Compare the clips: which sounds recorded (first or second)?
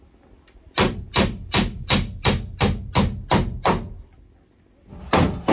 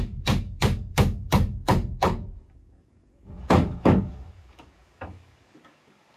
first